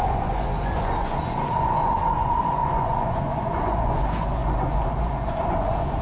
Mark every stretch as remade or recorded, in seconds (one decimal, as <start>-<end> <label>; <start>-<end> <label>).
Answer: 0.0-6.0 remade